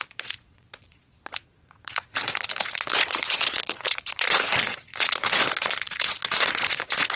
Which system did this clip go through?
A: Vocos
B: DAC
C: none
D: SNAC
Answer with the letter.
A